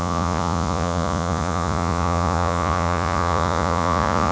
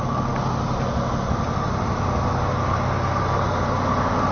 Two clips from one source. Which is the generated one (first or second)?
first